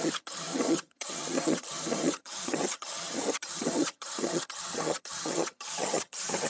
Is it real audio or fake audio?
fake